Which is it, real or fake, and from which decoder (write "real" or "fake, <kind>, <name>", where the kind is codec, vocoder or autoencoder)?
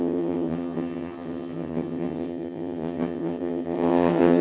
fake, vocoder, HiFi-GAN